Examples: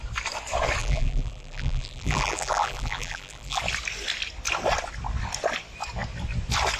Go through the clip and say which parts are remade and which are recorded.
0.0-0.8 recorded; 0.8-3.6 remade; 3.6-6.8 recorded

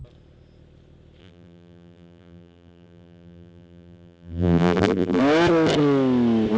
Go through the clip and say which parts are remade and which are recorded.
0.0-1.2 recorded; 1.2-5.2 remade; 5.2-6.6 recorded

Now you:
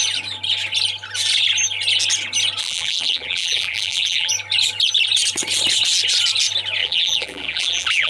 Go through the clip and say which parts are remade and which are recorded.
0.0-2.6 recorded; 2.6-4.3 remade; 4.3-6.8 recorded; 6.8-8.1 remade

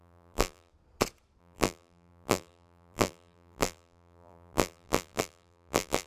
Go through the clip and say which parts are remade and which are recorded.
0.0-0.7 remade; 0.7-1.4 recorded; 1.4-6.1 remade

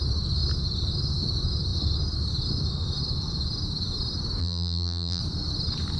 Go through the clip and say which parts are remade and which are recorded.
0.0-4.4 recorded; 4.4-5.2 remade; 5.2-6.0 recorded

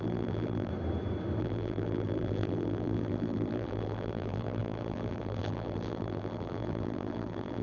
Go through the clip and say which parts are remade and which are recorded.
0.0-0.7 remade; 0.7-1.4 recorded; 1.4-7.6 remade

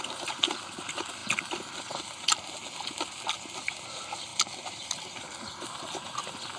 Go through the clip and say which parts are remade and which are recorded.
0.0-1.2 remade; 1.2-1.8 recorded; 1.8-2.6 remade; 2.6-3.4 recorded; 3.4-4.3 remade; 4.3-6.6 recorded

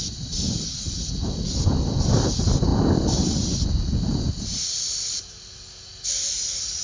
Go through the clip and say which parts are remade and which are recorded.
0.0-6.8 recorded